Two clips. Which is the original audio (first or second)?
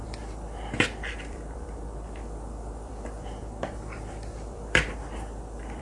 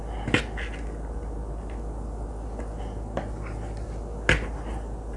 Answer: second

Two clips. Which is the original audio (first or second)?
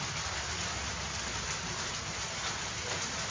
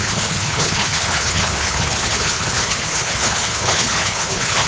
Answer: first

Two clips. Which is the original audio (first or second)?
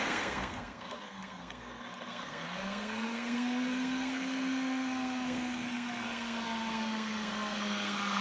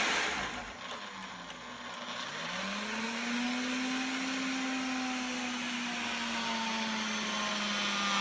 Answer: second